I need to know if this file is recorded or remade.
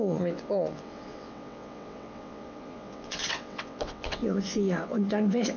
remade